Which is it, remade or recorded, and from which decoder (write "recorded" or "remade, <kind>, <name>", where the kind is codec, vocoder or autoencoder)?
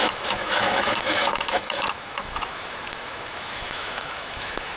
remade, autoencoder, DAC-VAE